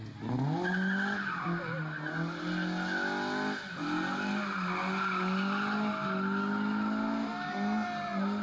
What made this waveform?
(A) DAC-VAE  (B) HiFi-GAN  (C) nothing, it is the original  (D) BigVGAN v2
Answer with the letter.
C